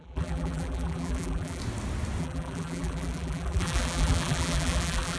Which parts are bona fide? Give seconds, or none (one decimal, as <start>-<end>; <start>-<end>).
1.6-2.2